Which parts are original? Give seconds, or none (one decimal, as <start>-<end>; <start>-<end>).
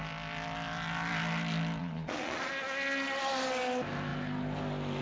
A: 0.0-1.8; 2.5-5.0